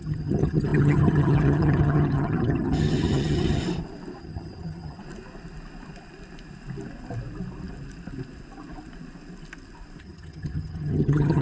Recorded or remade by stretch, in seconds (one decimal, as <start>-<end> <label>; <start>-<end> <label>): 0.0-3.6 remade; 3.6-4.2 recorded; 4.2-5.0 remade; 5.0-10.0 recorded; 10.0-11.4 remade